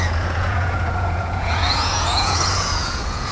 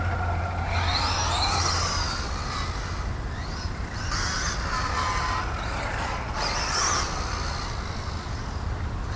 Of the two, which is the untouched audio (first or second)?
second